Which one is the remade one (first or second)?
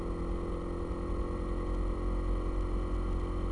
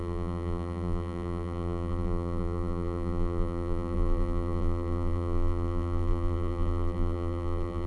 second